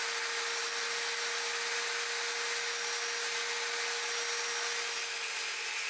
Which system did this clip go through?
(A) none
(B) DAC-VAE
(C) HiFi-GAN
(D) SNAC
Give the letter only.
A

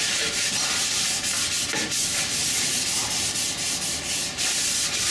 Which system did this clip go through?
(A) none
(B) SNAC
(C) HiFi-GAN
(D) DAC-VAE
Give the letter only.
A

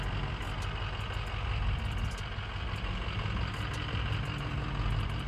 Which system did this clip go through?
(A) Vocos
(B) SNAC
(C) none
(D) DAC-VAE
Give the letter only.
C